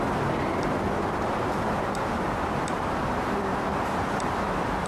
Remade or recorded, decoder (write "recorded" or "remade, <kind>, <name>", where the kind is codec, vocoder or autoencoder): remade, vocoder, BigVGAN v2